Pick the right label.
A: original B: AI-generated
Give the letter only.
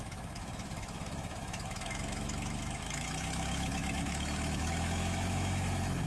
B